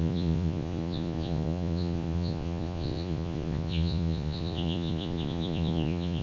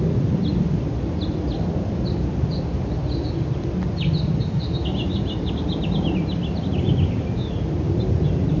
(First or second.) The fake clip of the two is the first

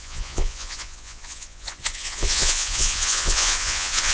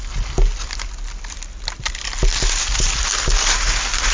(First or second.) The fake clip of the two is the first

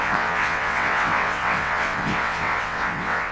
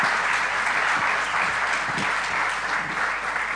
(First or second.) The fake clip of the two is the first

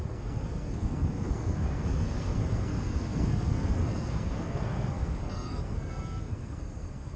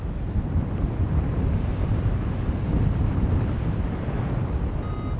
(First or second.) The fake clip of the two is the first